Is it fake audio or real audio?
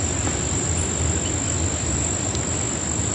real